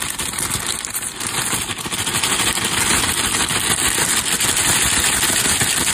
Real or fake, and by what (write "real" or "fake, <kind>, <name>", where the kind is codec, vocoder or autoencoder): real